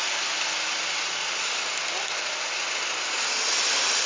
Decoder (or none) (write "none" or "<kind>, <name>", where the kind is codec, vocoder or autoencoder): none